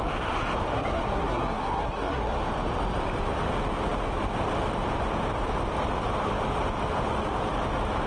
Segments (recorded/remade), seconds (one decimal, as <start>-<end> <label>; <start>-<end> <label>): 0.0-0.7 recorded; 0.7-2.4 remade; 2.4-8.1 recorded